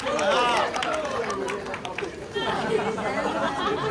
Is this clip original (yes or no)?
yes